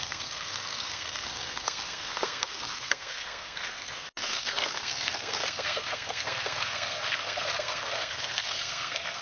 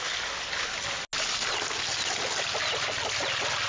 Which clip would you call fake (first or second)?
first